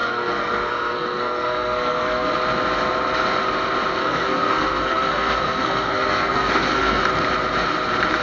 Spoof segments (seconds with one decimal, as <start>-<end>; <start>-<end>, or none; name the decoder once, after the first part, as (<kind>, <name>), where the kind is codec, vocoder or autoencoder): 0.0-2.3 (codec, SNAC); 4.0-7.0